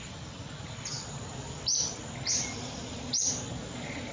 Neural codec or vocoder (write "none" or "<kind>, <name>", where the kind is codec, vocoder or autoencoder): none